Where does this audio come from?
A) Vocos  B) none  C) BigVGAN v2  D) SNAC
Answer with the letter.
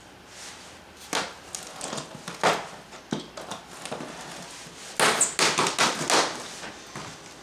B